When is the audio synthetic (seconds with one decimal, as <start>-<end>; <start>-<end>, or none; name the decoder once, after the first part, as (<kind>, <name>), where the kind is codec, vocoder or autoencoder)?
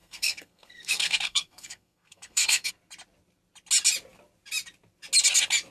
0.0-2.7 (codec, SNAC)